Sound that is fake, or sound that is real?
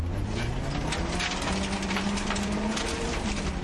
real